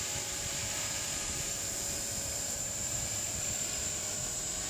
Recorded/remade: remade